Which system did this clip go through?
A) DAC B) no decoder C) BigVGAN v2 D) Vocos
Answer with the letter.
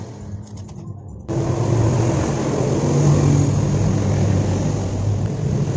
B